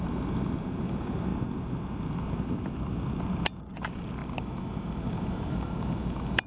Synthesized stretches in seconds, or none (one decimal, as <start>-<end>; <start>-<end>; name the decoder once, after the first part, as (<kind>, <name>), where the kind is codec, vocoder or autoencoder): none